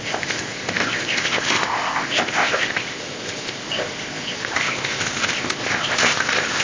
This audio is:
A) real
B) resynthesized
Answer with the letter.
B